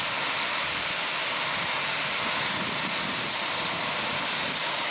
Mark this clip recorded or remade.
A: recorded